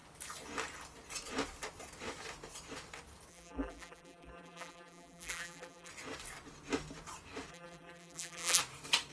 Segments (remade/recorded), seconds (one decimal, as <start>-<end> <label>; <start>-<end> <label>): 0.0-3.3 recorded; 3.3-5.9 remade; 5.9-7.5 recorded; 7.5-8.6 remade; 8.6-9.1 recorded